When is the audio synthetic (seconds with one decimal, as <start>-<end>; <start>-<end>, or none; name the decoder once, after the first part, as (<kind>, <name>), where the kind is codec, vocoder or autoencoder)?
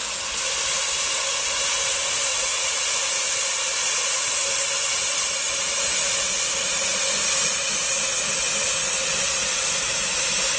2.3-3.3 (vocoder, Vocos); 3.8-4.4